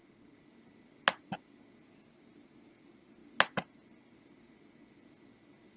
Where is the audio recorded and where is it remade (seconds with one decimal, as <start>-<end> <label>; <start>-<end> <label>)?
0.0-5.8 recorded